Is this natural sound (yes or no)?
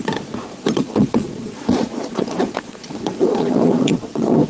no